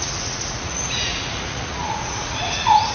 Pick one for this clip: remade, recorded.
remade